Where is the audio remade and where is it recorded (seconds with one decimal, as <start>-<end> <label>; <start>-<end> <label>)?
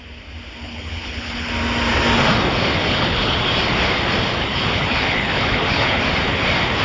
0.0-0.6 recorded; 0.6-1.5 remade; 1.5-2.8 recorded; 2.8-3.4 remade; 3.4-4.4 recorded; 4.4-6.0 remade; 6.0-6.8 recorded